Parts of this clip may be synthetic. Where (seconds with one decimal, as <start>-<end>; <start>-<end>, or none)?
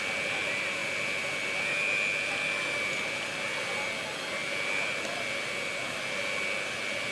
none